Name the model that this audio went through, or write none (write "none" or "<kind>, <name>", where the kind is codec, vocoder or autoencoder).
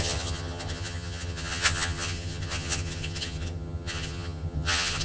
vocoder, HiFi-GAN